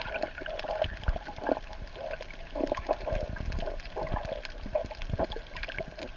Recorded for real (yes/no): yes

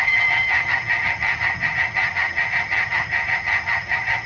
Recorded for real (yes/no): no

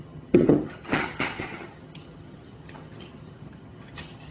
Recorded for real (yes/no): no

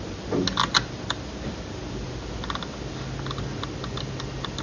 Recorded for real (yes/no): yes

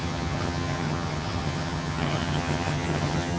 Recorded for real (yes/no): no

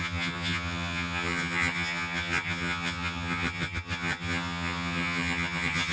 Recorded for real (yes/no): no